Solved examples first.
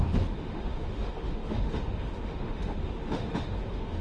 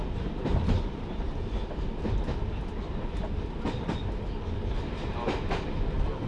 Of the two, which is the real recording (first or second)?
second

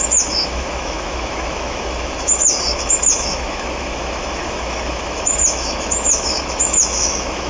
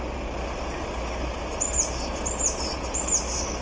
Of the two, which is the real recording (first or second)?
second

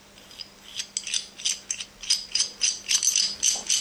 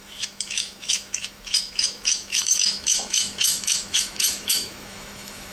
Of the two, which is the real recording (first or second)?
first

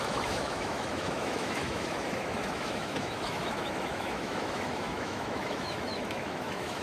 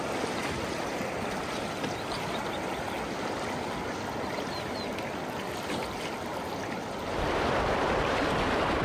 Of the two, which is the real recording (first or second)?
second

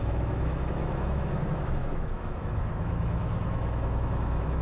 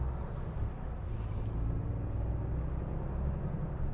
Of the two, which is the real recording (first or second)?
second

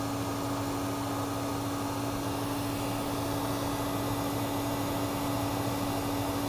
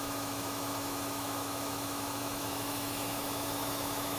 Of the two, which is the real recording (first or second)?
first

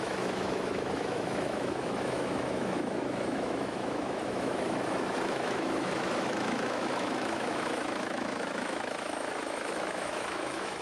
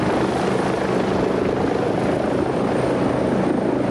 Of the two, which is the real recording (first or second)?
second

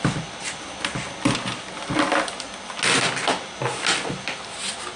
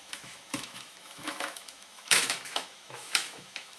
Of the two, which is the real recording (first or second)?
first